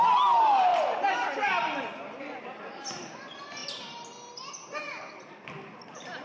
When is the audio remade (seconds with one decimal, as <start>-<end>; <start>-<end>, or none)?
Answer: none